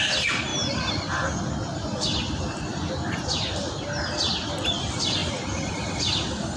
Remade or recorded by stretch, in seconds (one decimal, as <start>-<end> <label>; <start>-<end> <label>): 0.0-6.6 recorded

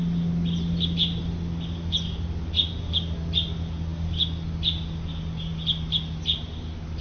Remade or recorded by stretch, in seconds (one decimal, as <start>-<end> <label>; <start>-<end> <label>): 0.0-7.0 recorded

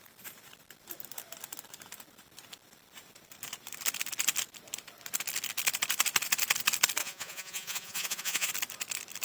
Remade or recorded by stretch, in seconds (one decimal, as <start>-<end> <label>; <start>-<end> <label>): 0.0-7.0 recorded; 7.0-8.5 remade; 8.5-9.2 recorded

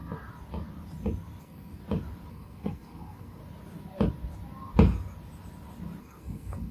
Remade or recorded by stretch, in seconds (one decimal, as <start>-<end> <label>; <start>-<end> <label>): 0.0-1.4 recorded; 1.4-1.8 remade; 1.8-2.3 recorded; 2.3-3.4 remade; 3.4-6.0 recorded; 6.0-6.7 remade

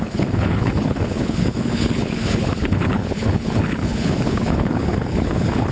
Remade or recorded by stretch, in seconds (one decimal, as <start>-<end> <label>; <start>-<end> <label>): 0.0-5.7 remade

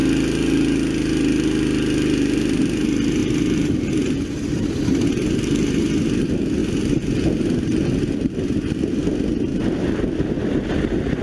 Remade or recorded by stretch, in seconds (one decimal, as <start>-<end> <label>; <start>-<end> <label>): 0.0-3.2 recorded; 3.2-4.8 remade; 4.8-6.6 recorded; 6.6-8.9 remade; 8.9-11.2 recorded

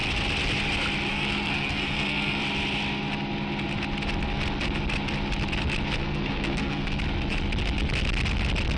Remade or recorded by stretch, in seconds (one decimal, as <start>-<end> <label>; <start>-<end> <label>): 0.0-1.1 recorded; 1.1-2.4 remade; 2.4-6.0 recorded; 6.0-7.0 remade; 7.0-8.8 recorded

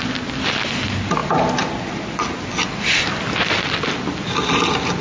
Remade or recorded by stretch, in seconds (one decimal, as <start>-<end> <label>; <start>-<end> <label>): 0.0-5.0 recorded